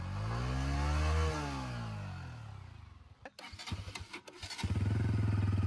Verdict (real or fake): real